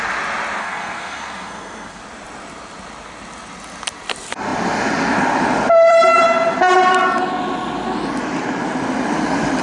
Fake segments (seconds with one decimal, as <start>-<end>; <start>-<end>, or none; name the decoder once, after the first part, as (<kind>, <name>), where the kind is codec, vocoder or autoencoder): 0.6-2.0 (codec, SNAC)